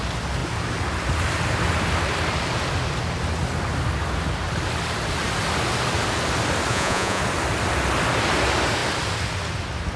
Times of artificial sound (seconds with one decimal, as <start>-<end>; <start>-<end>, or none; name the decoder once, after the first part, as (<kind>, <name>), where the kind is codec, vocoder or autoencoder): 6.7-7.2 (vocoder, Vocos)